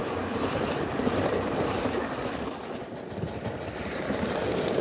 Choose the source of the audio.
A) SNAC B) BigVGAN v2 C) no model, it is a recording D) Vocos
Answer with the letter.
B